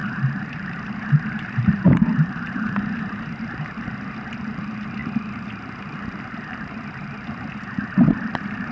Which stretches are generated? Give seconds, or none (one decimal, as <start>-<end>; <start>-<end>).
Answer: 0.0-8.7